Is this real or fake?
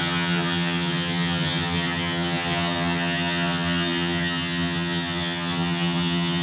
fake